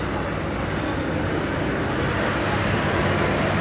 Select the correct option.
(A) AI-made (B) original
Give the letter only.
B